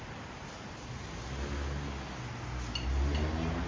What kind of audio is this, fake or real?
real